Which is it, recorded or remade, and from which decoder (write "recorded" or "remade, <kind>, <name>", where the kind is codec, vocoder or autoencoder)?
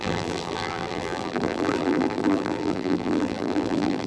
remade, vocoder, BigVGAN v2